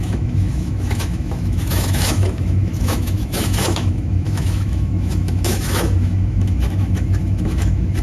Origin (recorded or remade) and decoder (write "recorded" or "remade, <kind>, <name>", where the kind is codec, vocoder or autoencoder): remade, autoencoder, DAC-VAE